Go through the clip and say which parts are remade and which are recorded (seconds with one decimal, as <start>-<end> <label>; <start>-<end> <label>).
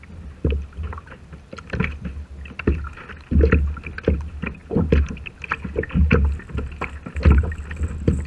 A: 0.0-8.3 recorded